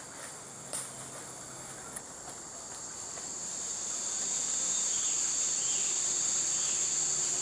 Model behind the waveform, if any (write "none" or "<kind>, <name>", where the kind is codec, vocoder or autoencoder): none